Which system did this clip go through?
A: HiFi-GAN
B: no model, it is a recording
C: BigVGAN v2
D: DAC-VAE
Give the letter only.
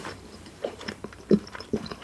C